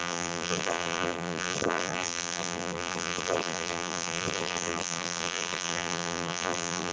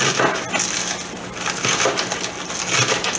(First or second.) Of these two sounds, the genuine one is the second